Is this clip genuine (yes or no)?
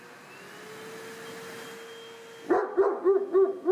yes